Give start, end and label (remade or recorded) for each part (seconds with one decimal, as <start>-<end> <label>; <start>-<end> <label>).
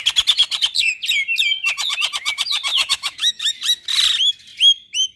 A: 0.0-2.7 recorded; 2.7-3.5 remade; 3.5-5.2 recorded